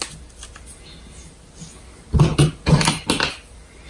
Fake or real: real